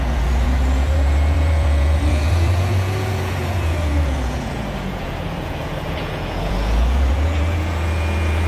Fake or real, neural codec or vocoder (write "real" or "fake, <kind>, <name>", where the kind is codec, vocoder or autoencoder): fake, vocoder, Vocos